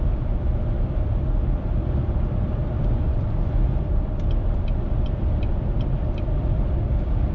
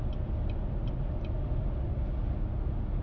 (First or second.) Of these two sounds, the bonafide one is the second